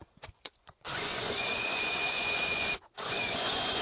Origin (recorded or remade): remade